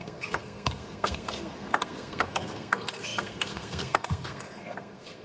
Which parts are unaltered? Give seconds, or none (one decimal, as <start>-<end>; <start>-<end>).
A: none